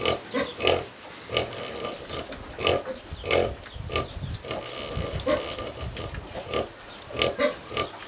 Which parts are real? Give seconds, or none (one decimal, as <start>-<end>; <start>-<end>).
0.0-8.1